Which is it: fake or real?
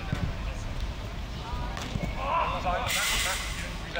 real